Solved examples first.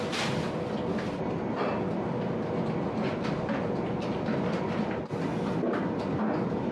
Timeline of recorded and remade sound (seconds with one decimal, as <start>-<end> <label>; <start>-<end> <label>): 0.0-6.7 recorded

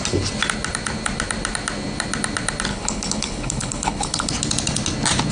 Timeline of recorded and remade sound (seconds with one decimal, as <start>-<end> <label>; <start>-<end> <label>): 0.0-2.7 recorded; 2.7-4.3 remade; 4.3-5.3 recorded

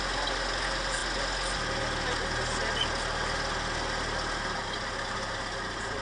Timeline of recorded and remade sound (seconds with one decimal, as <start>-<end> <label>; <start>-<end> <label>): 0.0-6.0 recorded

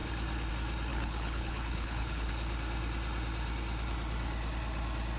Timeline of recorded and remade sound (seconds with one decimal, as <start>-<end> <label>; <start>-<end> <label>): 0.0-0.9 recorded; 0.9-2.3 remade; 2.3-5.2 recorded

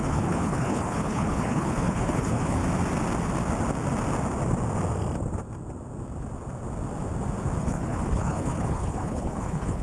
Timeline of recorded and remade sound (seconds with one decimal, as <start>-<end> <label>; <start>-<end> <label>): 0.0-2.6 remade; 2.6-7.6 recorded; 7.6-9.8 remade

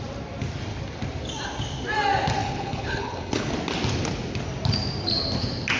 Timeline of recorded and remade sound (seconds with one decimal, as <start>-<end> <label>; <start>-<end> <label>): 0.0-2.4 recorded; 2.4-3.5 remade; 3.5-5.8 recorded

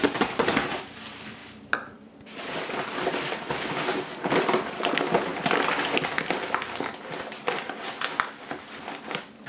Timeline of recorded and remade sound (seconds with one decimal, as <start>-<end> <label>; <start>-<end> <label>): 0.0-9.5 recorded